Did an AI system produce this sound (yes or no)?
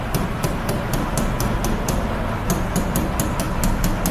no